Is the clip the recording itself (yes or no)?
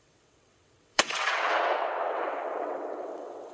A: no